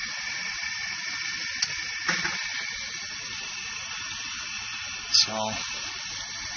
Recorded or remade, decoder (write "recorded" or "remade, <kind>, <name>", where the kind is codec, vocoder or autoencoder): recorded